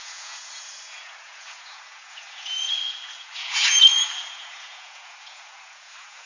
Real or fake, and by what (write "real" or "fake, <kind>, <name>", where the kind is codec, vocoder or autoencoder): fake, vocoder, Vocos